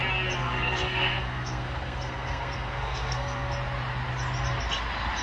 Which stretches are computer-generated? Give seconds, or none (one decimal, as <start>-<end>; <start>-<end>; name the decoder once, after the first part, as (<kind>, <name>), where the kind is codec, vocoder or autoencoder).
0.4-3.5 (codec, SNAC)